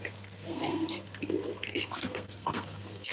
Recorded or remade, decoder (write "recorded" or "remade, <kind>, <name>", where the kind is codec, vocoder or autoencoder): remade, codec, SNAC